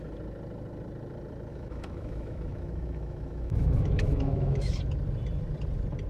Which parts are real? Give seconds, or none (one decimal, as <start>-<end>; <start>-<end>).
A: 0.0-1.5; 4.8-6.1